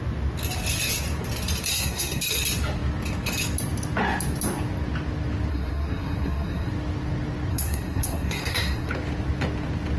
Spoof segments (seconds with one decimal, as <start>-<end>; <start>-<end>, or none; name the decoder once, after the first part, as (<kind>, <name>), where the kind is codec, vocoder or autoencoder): 1.7-2.2 (codec, SNAC); 5.5-6.7; 7.5-8.9